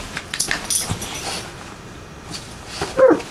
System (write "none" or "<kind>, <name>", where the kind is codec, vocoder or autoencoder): vocoder, BigVGAN v2